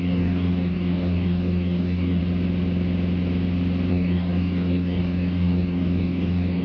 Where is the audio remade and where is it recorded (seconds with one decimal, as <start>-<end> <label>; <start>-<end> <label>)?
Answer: 0.0-2.2 remade; 2.2-3.9 recorded; 3.9-6.6 remade

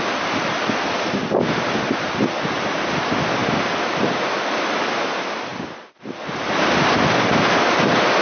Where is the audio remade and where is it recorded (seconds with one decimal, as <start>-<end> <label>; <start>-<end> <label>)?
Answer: 0.0-8.2 recorded

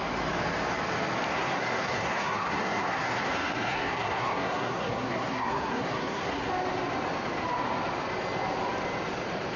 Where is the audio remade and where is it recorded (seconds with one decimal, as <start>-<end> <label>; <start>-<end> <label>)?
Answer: 0.0-1.3 recorded; 1.3-6.5 remade; 6.5-9.6 recorded

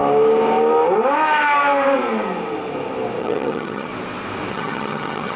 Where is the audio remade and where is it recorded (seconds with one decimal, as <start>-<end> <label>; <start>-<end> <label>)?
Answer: 0.0-3.2 recorded; 3.2-3.9 remade; 3.9-4.5 recorded; 4.5-5.4 remade

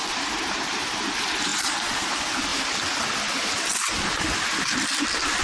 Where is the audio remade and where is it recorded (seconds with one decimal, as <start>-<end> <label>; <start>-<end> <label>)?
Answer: 0.0-5.4 recorded

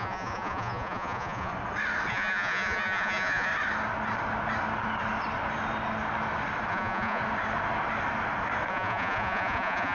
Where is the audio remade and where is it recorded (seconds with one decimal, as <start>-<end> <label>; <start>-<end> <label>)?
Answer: 0.0-1.5 remade; 1.5-2.1 recorded; 2.1-3.5 remade; 3.5-6.7 recorded; 6.7-7.2 remade; 7.2-8.7 recorded; 8.7-9.9 remade